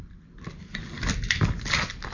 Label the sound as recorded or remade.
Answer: recorded